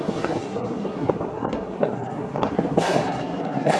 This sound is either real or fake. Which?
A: fake